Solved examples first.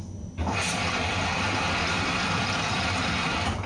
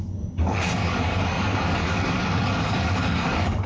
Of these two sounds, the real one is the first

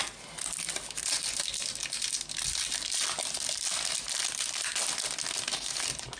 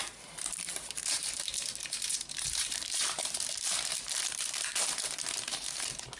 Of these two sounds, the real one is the first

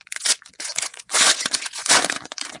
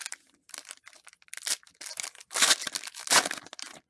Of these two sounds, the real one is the second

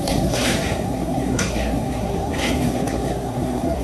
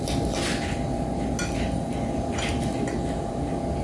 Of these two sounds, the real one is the second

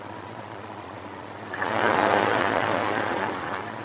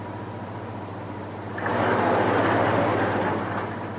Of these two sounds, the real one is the second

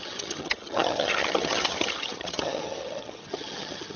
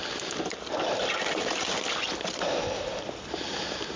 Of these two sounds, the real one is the second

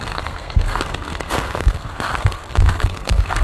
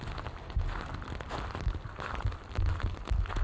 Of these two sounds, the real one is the second